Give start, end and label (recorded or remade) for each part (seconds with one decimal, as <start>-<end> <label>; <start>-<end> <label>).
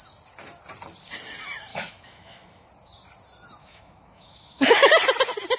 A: 0.0-1.7 recorded; 1.7-2.7 remade; 2.7-3.6 recorded; 3.6-4.9 remade; 4.9-5.6 recorded